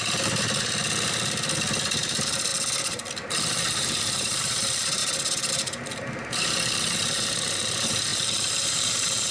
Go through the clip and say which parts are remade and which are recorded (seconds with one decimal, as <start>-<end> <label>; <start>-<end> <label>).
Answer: 0.0-2.5 remade; 2.5-3.3 recorded; 3.3-5.0 remade; 5.0-5.5 recorded; 5.5-9.3 remade